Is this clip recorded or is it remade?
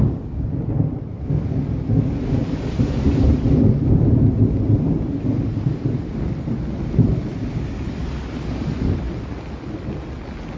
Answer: recorded